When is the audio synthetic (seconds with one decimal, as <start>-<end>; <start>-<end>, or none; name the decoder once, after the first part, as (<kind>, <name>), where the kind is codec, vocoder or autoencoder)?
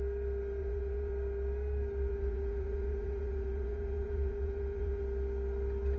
0.6-1.1 (vocoder, Vocos); 2.1-5.0